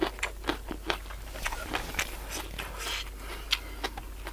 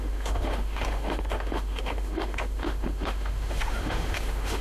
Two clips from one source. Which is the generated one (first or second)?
second